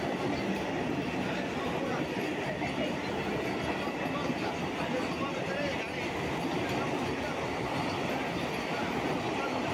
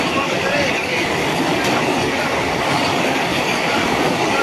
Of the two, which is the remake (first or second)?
second